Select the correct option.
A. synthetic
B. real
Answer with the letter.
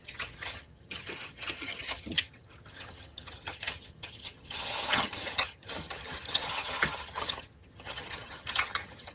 A